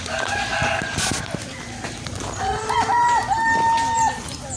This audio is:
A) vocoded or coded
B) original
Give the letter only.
B